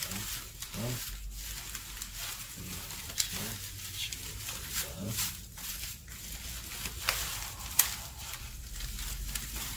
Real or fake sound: real